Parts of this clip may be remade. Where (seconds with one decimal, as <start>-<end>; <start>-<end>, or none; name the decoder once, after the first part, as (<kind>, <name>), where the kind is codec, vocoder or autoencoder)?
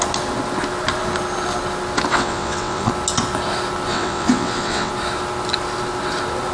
2.1-2.9 (vocoder, WaveNeXt); 3.9-4.9